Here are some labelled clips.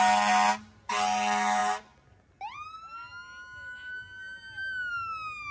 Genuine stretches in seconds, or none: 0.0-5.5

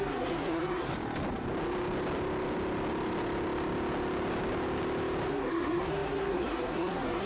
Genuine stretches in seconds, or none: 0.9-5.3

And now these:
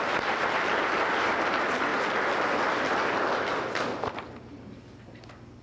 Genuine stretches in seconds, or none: 0.0-5.6

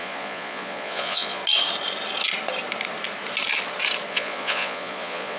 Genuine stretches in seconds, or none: 1.4-4.1

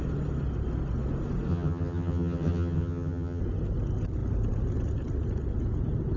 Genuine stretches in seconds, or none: 0.0-1.5; 3.4-6.2

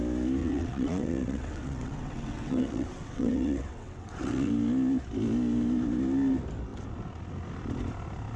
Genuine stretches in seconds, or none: 0.0-0.4; 4.5-8.4